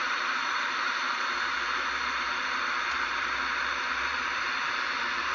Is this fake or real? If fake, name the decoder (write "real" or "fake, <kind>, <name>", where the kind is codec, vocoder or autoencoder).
fake, vocoder, BigVGAN v2